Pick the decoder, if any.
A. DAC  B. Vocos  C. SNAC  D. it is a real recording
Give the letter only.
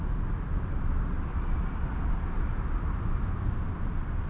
D